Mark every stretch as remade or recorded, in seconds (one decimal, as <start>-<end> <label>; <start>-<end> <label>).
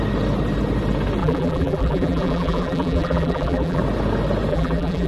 0.0-1.2 recorded; 1.2-3.8 remade; 3.8-4.5 recorded; 4.5-5.1 remade